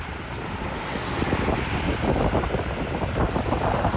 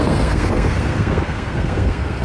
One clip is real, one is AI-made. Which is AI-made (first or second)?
second